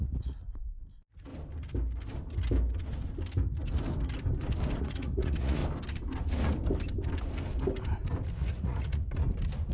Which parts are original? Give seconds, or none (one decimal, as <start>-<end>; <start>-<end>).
1.3-4.8; 5.6-8.3; 9.0-9.7